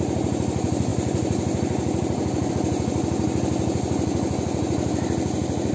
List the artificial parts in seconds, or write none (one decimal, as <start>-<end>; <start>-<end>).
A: 0.9-2.5